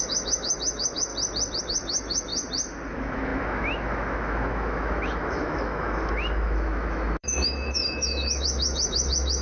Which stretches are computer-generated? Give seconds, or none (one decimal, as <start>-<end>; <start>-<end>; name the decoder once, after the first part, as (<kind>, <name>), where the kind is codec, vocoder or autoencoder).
0.0-1.1 (autoencoder, DAC-VAE); 1.6-2.3; 2.9-9.4

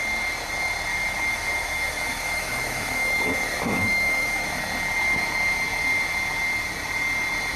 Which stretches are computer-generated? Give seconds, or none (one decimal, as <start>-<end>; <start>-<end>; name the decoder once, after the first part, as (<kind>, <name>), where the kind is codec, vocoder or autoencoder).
0.9-4.6 (autoencoder, DAC-VAE)

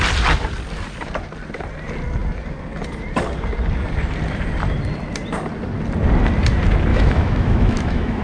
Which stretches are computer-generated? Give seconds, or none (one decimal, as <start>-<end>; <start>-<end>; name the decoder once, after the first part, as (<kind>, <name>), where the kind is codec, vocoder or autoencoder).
6.9-8.2 (autoencoder, DAC-VAE)